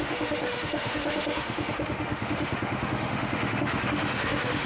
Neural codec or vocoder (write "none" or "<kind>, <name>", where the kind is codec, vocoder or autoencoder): autoencoder, DAC-VAE